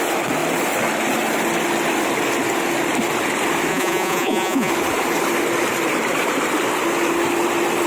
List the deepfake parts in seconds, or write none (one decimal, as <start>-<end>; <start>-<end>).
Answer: 3.7-4.7